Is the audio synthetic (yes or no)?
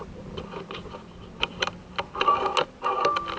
no